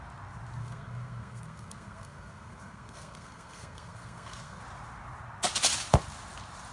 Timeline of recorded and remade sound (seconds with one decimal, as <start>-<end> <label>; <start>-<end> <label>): 0.0-0.6 recorded; 0.6-4.6 remade; 4.6-6.7 recorded